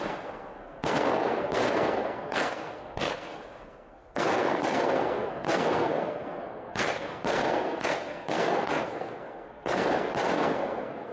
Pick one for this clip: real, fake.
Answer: fake